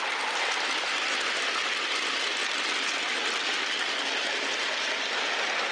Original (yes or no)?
yes